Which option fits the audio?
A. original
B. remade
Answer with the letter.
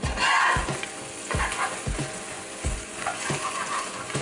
B